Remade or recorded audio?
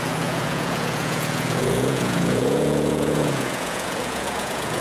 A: remade